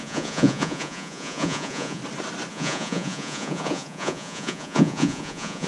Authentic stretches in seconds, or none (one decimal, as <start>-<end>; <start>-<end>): 2.0-2.5